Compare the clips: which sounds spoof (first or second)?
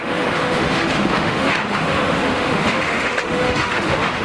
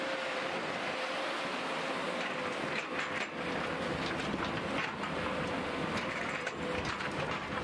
first